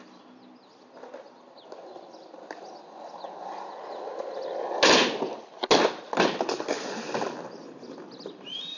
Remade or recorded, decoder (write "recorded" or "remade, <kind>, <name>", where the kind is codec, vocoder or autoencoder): recorded